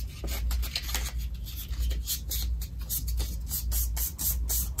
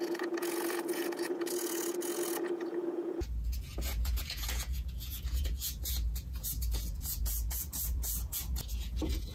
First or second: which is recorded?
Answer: first